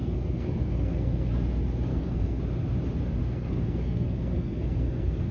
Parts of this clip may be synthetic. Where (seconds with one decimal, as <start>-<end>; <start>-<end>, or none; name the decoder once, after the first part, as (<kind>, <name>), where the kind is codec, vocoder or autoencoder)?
0.0-1.3 (codec, SNAC); 1.9-2.4; 3.2-5.3